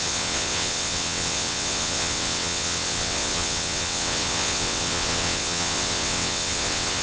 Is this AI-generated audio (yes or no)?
yes